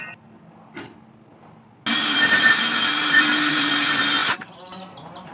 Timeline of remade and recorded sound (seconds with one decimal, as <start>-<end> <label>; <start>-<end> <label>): 0.0-1.9 recorded; 1.9-3.7 remade; 3.7-4.2 recorded; 4.2-5.3 remade